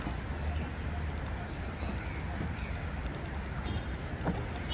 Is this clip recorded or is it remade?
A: recorded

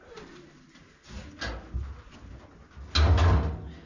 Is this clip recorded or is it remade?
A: recorded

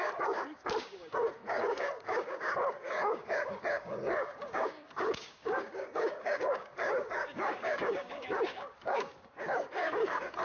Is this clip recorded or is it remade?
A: remade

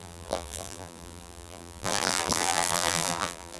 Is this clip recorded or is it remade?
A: remade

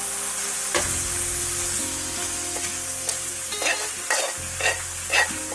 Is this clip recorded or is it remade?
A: recorded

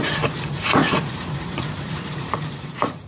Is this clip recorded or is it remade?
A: remade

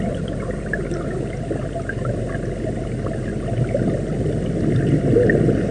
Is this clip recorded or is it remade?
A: recorded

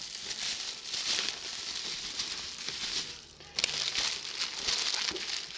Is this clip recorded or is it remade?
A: recorded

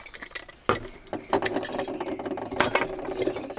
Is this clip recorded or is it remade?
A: recorded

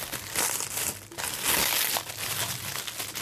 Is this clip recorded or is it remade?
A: recorded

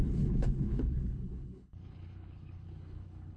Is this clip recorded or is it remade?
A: remade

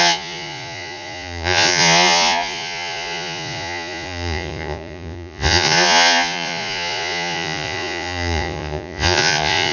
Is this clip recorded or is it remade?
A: remade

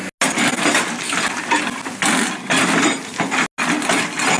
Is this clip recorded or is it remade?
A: recorded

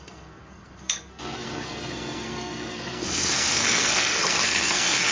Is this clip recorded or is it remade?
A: remade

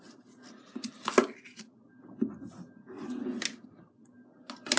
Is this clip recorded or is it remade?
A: recorded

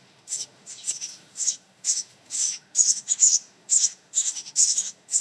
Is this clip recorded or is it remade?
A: remade